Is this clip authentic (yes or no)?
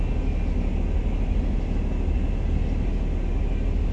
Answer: yes